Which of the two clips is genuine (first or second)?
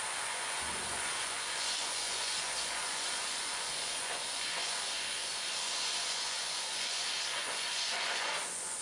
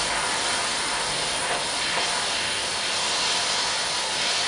second